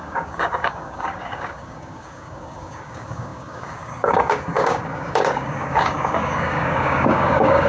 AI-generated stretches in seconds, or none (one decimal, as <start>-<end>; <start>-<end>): 0.0-7.7